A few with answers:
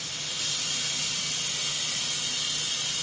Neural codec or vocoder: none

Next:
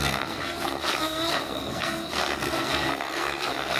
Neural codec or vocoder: codec, SNAC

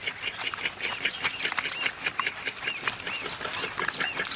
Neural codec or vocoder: none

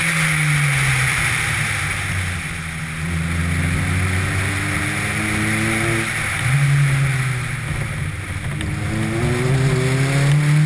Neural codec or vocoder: none